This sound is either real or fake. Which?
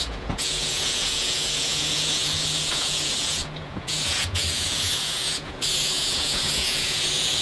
fake